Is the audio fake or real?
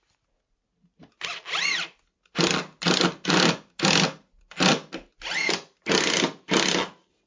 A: real